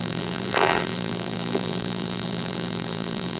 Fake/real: fake